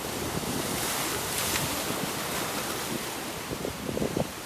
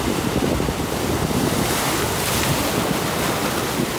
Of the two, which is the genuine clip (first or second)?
second